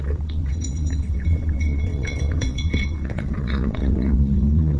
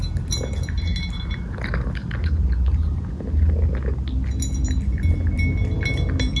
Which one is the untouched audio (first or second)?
second